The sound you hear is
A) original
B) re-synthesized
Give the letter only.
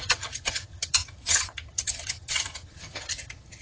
B